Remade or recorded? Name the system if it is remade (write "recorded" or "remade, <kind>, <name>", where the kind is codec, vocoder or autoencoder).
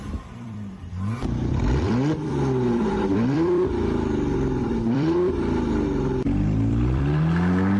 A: remade, vocoder, BigVGAN v2